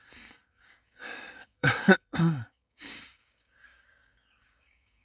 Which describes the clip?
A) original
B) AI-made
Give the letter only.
B